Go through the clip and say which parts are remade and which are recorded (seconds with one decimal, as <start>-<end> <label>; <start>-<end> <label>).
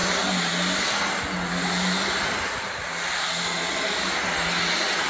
0.0-5.1 recorded